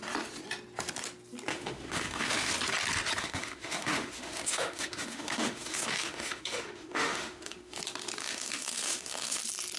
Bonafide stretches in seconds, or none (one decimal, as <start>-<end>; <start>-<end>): 0.0-1.5; 2.5-3.2; 7.8-8.2; 9.4-9.8

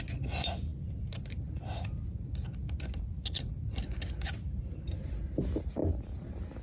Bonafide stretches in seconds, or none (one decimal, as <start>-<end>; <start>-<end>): 0.0-6.6

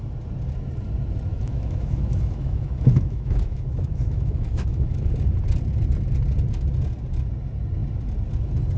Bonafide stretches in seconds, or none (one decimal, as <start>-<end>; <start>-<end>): 0.0-1.3; 5.1-8.8

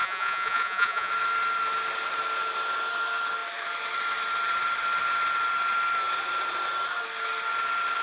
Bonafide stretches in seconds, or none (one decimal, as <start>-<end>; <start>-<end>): 1.1-8.0

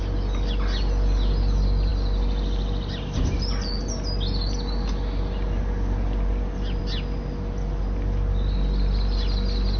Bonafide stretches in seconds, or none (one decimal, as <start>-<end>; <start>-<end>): 0.0-9.8

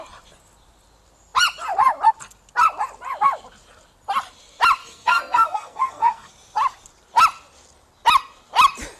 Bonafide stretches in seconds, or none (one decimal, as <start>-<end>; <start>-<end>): 0.0-4.8; 6.3-9.0

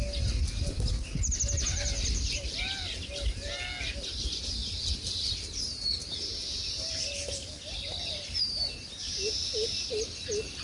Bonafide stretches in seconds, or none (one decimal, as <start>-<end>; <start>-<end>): 0.0-1.7; 2.6-4.6; 5.3-6.3; 7.0-10.6